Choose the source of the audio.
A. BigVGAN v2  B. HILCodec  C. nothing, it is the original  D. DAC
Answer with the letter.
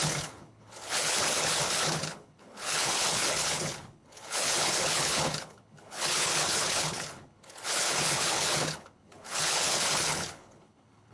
B